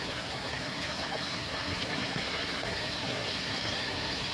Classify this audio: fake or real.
fake